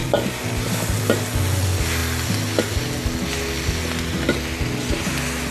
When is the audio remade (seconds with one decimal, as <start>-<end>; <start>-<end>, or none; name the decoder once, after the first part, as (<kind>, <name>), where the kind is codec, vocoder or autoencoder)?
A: 0.0-1.0 (vocoder, BigVGAN v2)